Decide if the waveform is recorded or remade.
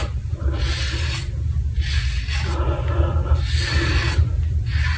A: recorded